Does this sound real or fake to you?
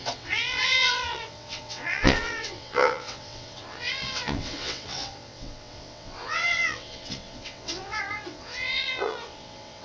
fake